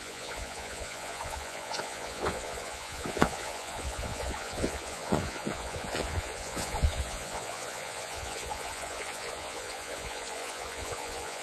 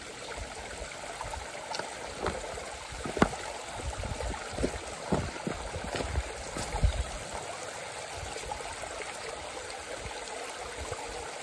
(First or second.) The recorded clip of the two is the second